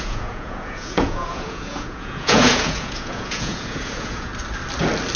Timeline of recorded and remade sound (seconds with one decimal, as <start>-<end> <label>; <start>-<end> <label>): 0.0-4.3 remade; 4.3-5.2 recorded